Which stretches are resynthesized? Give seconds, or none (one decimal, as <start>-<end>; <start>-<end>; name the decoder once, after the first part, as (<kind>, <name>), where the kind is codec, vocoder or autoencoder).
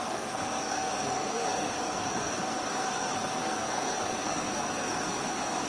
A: 0.0-5.7 (codec, SNAC)